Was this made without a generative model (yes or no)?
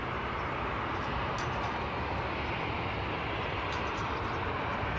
yes